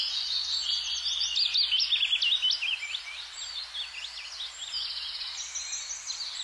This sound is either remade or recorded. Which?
recorded